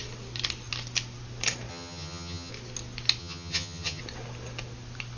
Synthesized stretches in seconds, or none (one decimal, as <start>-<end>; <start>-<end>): 1.7-2.5; 3.2-4.0